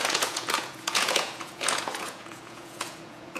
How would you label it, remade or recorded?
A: remade